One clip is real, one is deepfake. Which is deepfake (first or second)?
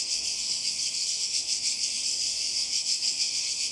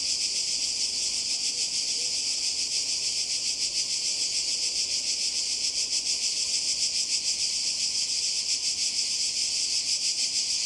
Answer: first